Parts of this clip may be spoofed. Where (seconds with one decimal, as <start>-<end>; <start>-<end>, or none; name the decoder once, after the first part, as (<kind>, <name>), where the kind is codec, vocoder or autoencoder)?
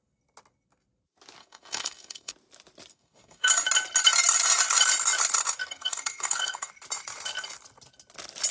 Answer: 1.4-2.3 (codec, SNAC); 2.9-3.5; 5.6-6.7